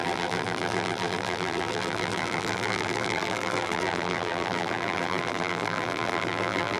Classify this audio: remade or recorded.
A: remade